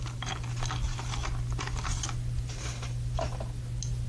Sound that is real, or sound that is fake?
real